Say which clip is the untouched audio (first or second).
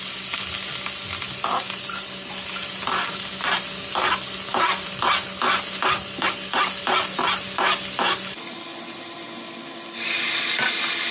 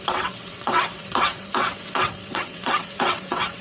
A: first